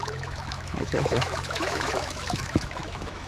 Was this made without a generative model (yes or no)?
no